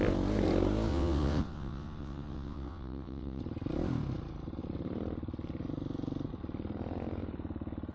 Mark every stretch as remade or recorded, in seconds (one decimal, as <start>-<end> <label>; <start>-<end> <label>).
0.0-0.9 recorded; 0.9-3.4 remade; 3.4-7.9 recorded